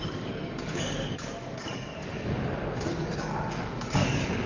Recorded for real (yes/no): no